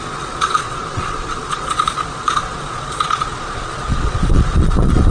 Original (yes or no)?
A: no